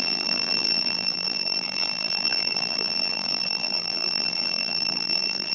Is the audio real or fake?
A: fake